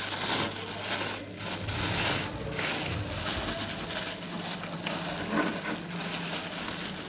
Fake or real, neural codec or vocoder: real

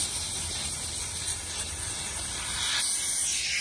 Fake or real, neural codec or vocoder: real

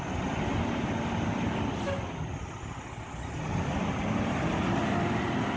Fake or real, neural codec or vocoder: real